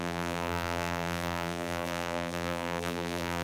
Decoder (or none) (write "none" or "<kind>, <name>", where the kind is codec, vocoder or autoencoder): vocoder, BigVGAN v2